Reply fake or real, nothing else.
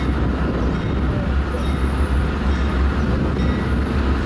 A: real